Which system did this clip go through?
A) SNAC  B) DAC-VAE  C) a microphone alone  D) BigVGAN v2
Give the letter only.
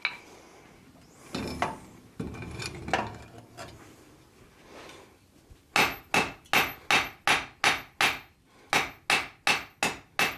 C